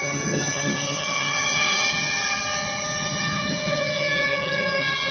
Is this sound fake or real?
fake